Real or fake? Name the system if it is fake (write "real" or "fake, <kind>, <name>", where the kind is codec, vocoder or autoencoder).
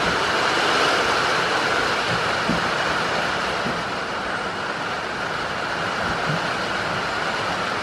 real